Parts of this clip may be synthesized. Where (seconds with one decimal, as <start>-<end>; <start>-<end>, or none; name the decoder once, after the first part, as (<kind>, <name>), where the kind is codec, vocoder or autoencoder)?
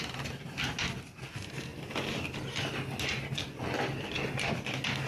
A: none